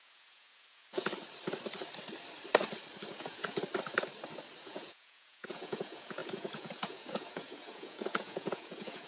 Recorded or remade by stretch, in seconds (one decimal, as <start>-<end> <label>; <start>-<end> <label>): 0.0-1.1 remade; 1.1-3.1 recorded; 3.1-3.6 remade; 3.6-4.6 recorded; 4.6-9.1 remade